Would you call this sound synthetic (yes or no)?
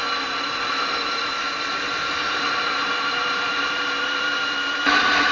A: yes